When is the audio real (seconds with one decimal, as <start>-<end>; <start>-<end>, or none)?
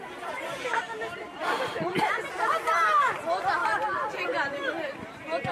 0.0-3.6; 4.6-5.5